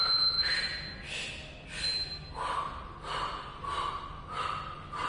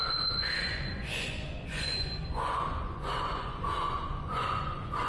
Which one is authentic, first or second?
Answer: first